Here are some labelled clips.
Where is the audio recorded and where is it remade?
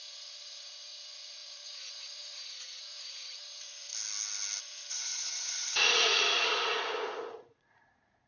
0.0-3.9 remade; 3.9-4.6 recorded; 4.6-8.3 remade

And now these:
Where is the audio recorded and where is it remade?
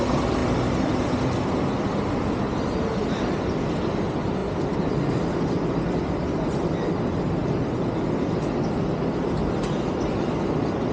0.0-10.9 recorded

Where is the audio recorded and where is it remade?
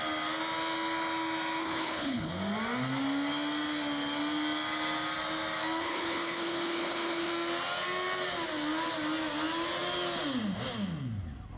0.0-1.6 recorded; 1.6-2.3 remade; 2.3-5.8 recorded; 5.8-7.3 remade; 7.3-11.6 recorded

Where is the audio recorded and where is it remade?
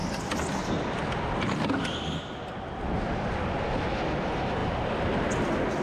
0.0-4.6 recorded; 4.6-5.3 remade; 5.3-5.8 recorded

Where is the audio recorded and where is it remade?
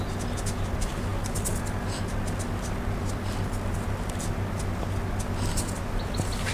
0.0-6.5 recorded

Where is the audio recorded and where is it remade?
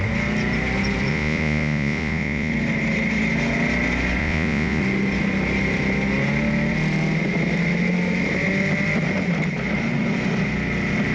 0.0-1.1 recorded; 1.1-2.5 remade; 2.5-4.2 recorded; 4.2-4.8 remade; 4.8-11.1 recorded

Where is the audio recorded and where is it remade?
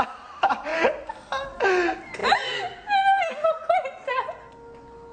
0.0-5.1 recorded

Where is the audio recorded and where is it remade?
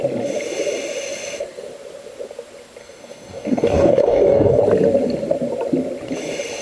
0.0-2.8 recorded; 2.8-4.6 remade; 4.6-6.6 recorded